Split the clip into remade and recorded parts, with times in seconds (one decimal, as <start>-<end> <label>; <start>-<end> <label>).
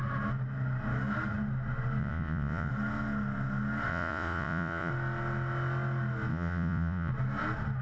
0.0-2.0 recorded; 2.0-2.7 remade; 2.7-3.9 recorded; 3.9-4.9 remade; 4.9-6.3 recorded; 6.3-7.1 remade; 7.1-7.8 recorded